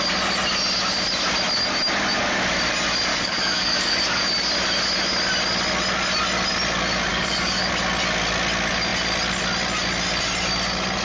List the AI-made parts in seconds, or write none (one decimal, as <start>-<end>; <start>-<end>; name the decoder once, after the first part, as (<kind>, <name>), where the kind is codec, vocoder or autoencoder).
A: 3.1-4.2 (codec, DAC); 7.1-7.7